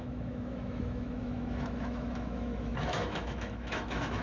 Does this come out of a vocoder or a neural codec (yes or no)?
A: yes